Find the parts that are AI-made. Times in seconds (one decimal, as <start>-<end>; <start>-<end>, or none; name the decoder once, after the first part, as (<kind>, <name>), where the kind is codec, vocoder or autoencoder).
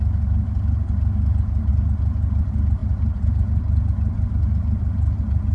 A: none